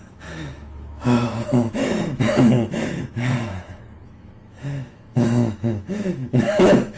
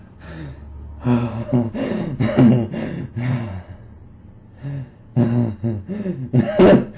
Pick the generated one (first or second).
first